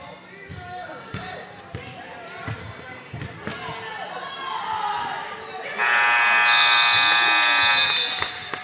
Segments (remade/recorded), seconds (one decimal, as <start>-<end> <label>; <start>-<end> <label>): 0.0-0.5 recorded; 0.5-1.6 remade; 1.6-2.6 recorded; 2.6-3.2 remade; 3.2-8.6 recorded